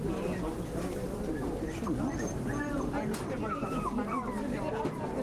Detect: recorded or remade recorded